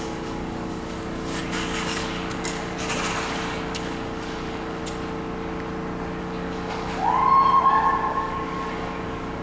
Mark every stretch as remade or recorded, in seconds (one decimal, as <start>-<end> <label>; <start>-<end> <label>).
0.0-4.8 remade; 4.8-6.2 recorded; 6.2-7.2 remade; 7.2-8.1 recorded; 8.1-9.4 remade